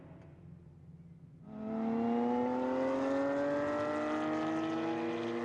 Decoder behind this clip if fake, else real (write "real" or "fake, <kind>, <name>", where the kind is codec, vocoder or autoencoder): real